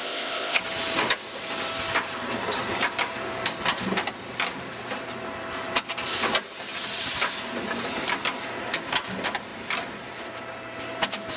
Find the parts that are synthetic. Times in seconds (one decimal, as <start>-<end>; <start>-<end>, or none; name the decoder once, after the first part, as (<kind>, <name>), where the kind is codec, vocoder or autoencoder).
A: 0.0-0.6 (codec, ZipCodec)